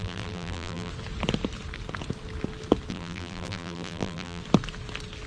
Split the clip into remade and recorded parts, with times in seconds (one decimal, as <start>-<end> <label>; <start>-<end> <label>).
0.0-0.9 remade; 0.9-2.9 recorded; 2.9-4.4 remade; 4.4-5.3 recorded